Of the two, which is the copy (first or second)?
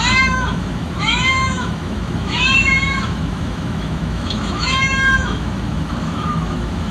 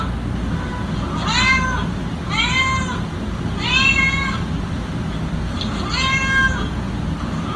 first